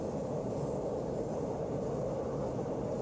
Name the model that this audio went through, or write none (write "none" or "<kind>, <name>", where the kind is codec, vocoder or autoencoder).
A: none